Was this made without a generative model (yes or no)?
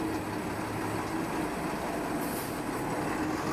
yes